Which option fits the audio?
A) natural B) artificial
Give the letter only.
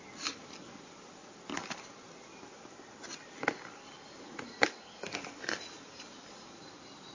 A